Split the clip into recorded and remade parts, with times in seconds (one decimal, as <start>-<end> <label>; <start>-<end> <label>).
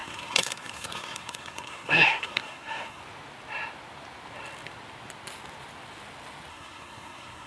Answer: 0.0-3.0 remade; 3.0-6.5 recorded; 6.5-7.5 remade